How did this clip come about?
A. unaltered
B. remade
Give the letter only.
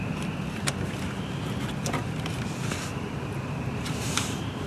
B